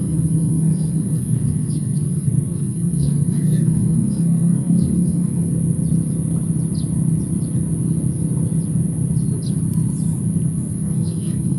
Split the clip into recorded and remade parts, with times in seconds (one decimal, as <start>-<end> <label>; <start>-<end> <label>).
0.0-5.5 remade; 5.5-10.7 recorded; 10.7-11.6 remade